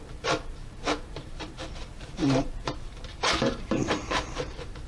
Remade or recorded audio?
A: remade